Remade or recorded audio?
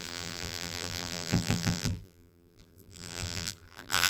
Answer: remade